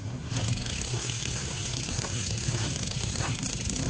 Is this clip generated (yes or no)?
yes